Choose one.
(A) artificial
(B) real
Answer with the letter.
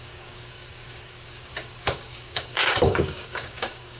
A